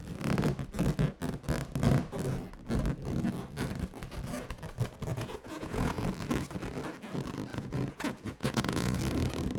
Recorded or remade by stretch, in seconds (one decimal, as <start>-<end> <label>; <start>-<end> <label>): 0.0-5.1 recorded; 5.1-6.0 remade; 6.0-7.5 recorded; 7.5-9.0 remade; 9.0-9.6 recorded